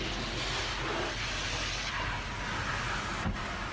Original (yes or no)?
yes